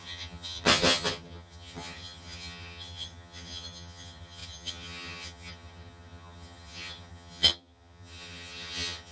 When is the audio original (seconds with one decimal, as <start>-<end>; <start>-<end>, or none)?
none

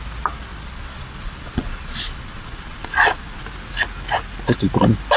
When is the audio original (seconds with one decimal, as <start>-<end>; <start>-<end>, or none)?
0.0-0.5; 3.4-5.2